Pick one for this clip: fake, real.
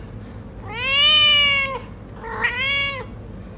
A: real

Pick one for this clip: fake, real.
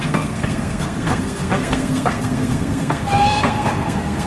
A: fake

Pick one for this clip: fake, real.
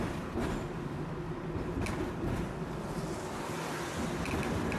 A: real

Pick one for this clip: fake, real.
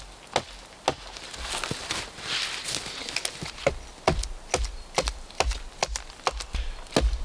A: real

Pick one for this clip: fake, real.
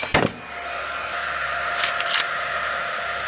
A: real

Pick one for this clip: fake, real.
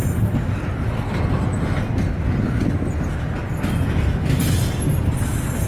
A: real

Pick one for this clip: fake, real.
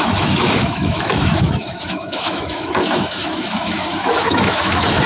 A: fake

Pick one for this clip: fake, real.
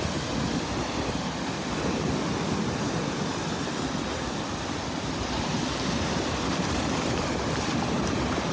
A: real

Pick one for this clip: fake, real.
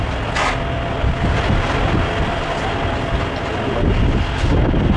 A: real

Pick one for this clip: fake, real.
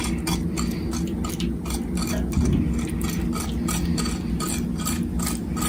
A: real